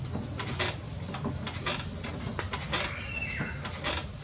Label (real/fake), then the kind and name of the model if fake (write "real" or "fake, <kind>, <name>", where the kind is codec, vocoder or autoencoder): real